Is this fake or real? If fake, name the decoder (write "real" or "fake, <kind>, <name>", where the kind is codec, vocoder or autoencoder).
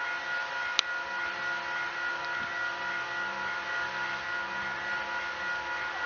real